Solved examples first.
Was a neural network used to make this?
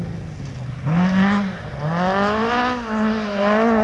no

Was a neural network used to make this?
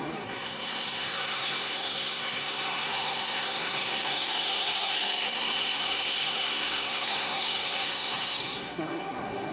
yes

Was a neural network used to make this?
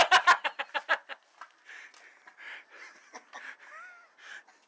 no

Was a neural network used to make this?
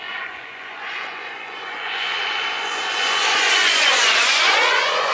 yes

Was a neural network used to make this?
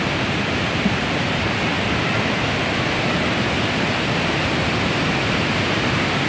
no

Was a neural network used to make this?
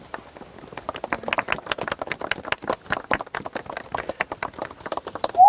no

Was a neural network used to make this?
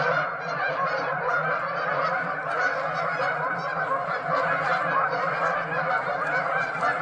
no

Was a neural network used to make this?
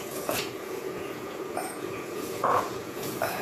yes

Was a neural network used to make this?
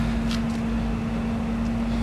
no